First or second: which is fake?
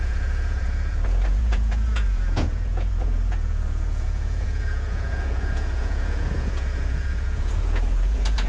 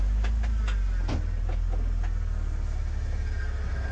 first